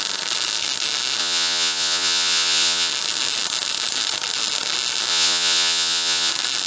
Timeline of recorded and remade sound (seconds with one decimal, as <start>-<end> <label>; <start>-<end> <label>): 0.0-1.2 recorded; 1.2-2.9 remade; 2.9-5.1 recorded; 5.1-6.3 remade; 6.3-6.7 recorded